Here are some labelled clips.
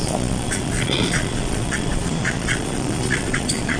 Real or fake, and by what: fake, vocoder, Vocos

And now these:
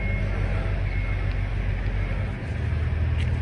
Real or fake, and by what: real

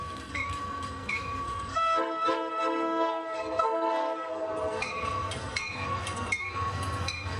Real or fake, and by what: fake, codec, SNAC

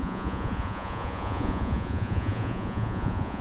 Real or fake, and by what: fake, vocoder, Vocos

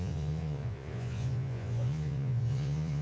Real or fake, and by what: fake, vocoder, Vocos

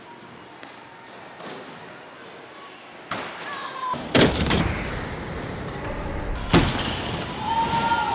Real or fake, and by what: real